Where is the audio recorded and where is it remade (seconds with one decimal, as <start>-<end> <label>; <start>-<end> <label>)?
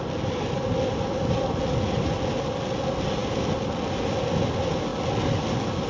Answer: 0.0-5.9 recorded